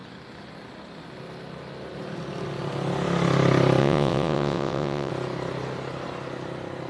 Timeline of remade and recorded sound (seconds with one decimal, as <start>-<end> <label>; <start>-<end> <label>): 0.0-3.8 recorded; 3.8-5.1 remade; 5.1-6.9 recorded